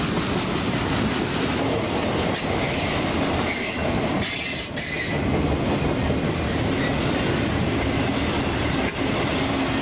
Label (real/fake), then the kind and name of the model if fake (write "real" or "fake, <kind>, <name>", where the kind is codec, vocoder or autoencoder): real